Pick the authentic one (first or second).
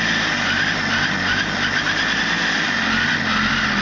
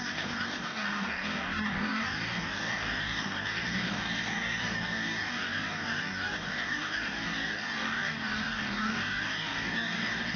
first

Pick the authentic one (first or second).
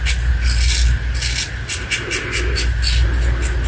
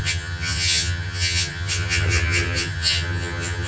first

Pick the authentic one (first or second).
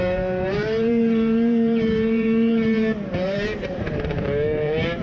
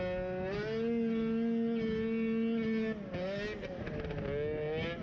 second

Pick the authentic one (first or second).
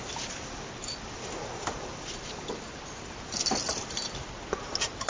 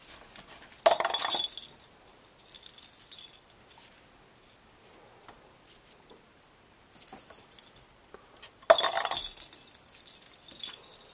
second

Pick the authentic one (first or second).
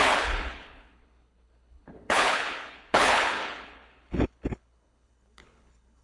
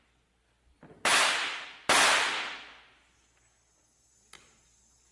second